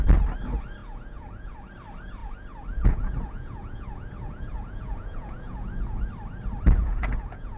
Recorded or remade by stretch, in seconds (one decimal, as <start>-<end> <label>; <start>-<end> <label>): 0.0-0.8 recorded; 0.8-1.7 remade; 1.7-2.2 recorded; 2.2-6.1 remade; 6.1-6.8 recorded; 6.8-7.6 remade